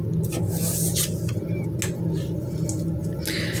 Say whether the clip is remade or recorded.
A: recorded